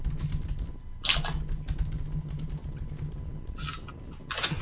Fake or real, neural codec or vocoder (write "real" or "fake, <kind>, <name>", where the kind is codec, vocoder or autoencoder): real